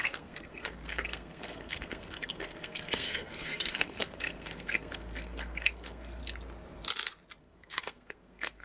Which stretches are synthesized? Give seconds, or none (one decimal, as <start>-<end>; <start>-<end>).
0.0-6.2; 7.4-8.6